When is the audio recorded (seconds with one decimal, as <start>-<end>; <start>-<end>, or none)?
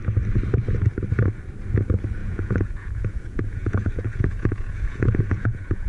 0.0-2.2